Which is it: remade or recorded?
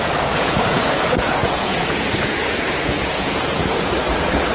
remade